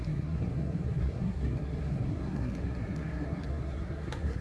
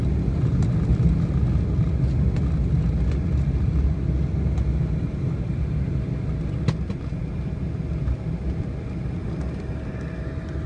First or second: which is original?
second